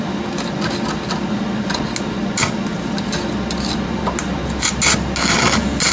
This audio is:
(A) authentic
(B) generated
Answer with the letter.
A